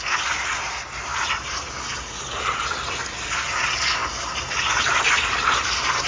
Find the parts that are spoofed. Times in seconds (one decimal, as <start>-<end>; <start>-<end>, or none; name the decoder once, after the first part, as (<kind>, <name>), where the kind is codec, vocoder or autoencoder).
none

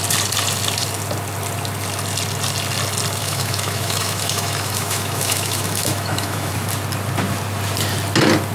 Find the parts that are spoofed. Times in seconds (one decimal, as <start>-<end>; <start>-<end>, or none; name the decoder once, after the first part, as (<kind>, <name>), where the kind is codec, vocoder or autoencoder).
3.2-6.5 (autoencoder, DAC-VAE)

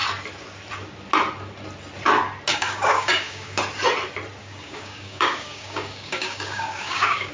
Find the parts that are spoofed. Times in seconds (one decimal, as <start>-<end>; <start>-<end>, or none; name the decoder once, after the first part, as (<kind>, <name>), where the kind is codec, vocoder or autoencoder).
2.5-3.6 (codec, DAC); 4.4-7.3